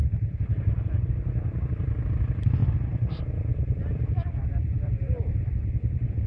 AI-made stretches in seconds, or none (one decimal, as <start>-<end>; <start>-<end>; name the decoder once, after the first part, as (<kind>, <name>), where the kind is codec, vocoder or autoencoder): 2.6-3.5 (vocoder, BigVGAN v2); 3.9-5.5